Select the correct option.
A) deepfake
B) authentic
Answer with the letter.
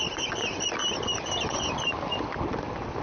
B